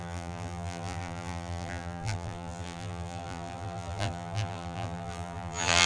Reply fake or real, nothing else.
fake